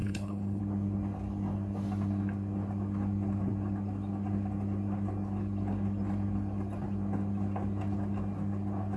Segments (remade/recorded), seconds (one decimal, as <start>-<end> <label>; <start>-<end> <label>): 0.0-0.6 remade; 0.6-9.0 recorded